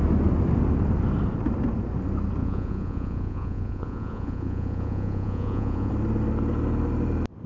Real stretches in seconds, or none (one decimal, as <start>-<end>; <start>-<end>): 0.0-2.4; 5.9-7.5